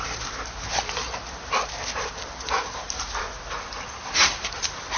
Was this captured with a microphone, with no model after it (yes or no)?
yes